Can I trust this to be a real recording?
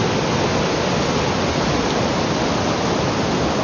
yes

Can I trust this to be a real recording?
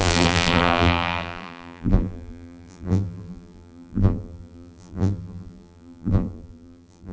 no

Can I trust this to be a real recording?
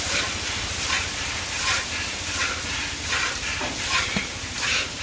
yes